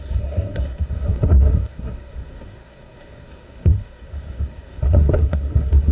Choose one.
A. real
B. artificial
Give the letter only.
B